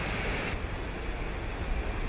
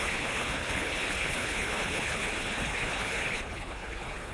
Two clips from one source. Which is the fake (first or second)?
second